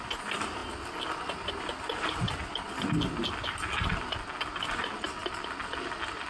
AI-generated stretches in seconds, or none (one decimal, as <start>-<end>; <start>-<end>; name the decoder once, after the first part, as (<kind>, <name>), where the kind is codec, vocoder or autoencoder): none